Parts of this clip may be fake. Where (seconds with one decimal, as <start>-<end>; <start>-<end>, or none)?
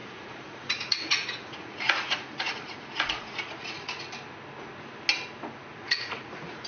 0.0-4.0; 5.7-6.7